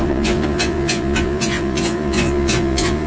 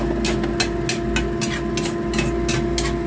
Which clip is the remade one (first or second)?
first